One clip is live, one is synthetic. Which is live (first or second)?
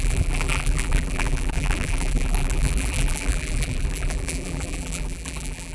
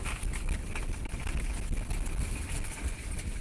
second